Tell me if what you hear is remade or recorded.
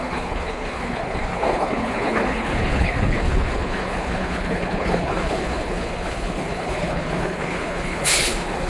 remade